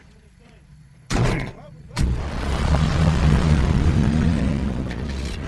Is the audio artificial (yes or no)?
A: yes